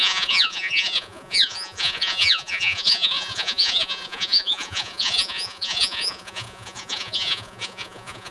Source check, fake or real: fake